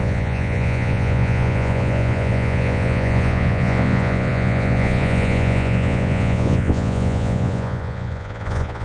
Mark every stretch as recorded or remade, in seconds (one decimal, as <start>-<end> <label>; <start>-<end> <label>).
0.0-8.8 remade